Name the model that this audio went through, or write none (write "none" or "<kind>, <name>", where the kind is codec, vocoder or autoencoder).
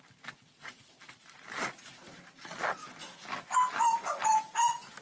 none